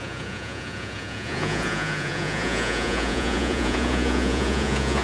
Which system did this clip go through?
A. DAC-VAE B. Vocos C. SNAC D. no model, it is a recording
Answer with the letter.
B